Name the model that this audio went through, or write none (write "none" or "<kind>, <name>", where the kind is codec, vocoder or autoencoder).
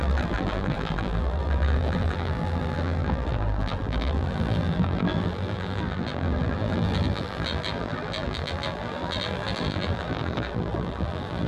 vocoder, BigVGAN v2